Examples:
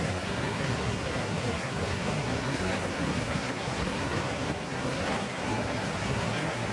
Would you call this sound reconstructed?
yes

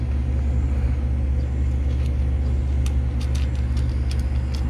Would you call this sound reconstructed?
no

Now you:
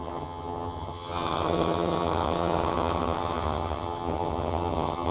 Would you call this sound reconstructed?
yes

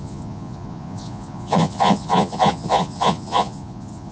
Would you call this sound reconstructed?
yes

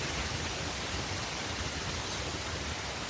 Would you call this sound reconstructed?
no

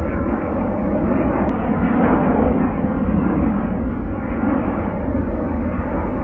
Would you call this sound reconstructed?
yes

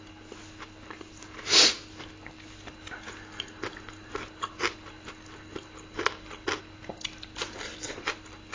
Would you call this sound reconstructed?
no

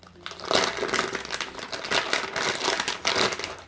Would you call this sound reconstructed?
no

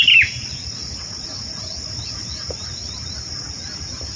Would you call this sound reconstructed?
no